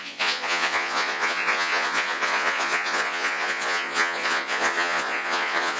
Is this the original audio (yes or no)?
no